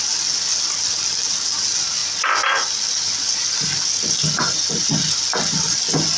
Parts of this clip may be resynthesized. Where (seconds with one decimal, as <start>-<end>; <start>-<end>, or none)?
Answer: none